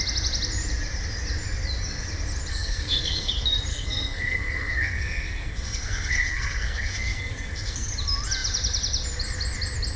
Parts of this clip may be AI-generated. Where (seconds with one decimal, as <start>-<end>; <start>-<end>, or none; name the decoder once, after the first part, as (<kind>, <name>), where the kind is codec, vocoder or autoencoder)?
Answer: 2.5-3.3 (codec, SNAC); 3.7-7.9